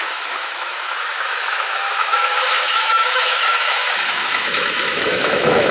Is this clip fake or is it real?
fake